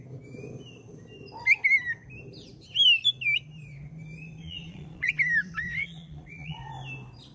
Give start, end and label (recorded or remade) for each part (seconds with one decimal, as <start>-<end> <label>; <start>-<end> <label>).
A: 0.0-4.4 recorded; 4.4-5.1 remade; 5.1-5.8 recorded; 5.8-6.7 remade; 6.7-7.3 recorded